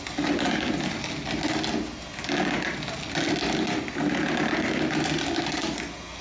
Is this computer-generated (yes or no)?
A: no